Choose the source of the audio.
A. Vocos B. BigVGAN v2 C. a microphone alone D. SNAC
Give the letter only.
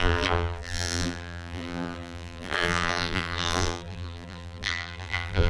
B